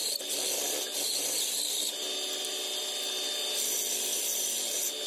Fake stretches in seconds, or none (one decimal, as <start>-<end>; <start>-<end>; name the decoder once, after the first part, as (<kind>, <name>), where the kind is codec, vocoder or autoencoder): none